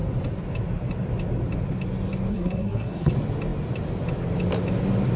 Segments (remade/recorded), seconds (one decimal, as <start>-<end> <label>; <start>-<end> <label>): 0.0-2.3 recorded; 2.3-3.1 remade; 3.1-5.2 recorded